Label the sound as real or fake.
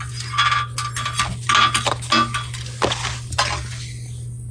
real